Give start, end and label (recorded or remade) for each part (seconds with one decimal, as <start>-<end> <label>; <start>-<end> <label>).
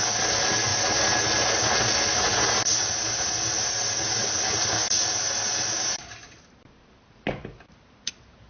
0.0-8.5 recorded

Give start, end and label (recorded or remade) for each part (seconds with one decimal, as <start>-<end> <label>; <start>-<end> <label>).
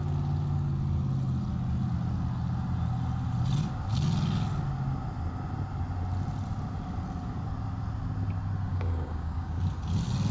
0.0-8.7 recorded; 8.7-9.6 remade; 9.6-10.3 recorded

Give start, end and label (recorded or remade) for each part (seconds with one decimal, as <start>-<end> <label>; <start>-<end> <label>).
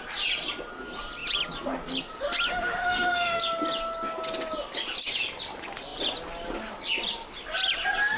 0.0-2.5 recorded; 2.5-3.4 remade; 3.4-8.2 recorded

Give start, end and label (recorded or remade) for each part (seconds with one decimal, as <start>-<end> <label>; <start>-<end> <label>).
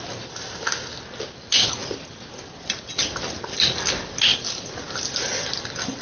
0.0-6.0 recorded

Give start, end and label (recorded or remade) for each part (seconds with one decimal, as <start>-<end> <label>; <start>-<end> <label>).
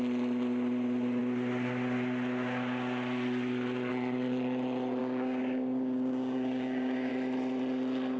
0.0-5.0 recorded; 5.0-7.1 remade; 7.1-8.2 recorded